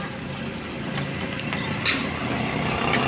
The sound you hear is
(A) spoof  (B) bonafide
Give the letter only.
B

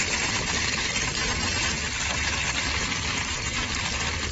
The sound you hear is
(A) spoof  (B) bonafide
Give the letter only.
A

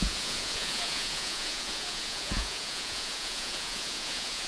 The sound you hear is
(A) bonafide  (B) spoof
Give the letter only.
B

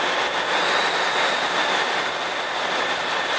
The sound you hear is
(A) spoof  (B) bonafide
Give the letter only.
B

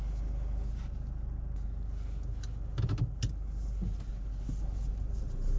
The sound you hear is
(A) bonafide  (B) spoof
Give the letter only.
A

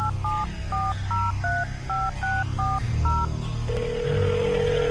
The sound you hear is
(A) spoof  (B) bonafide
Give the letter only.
B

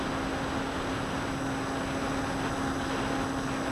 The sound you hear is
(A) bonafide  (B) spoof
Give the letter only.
A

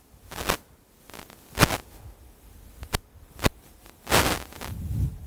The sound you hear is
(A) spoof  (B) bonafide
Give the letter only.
B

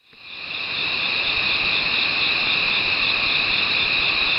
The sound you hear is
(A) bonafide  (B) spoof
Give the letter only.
B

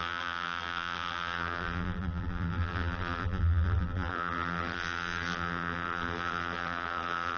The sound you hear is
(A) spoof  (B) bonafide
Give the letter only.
A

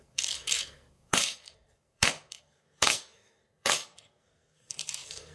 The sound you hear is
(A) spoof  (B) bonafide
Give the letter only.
A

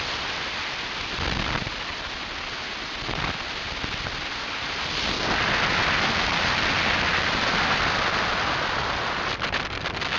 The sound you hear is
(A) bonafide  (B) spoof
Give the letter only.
A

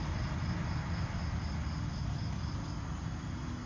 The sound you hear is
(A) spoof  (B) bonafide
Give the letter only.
B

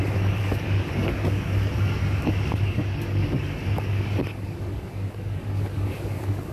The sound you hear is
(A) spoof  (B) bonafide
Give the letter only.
A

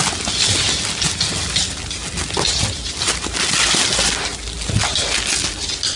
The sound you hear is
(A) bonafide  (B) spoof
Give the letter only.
A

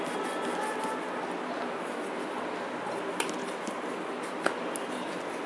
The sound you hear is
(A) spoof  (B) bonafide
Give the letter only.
B